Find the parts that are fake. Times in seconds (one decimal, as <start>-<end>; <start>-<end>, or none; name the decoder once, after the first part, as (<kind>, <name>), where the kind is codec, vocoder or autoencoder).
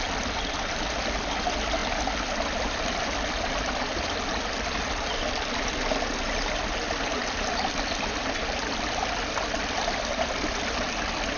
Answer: none